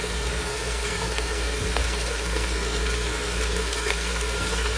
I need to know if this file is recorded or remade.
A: remade